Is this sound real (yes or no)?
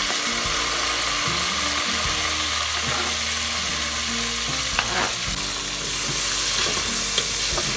yes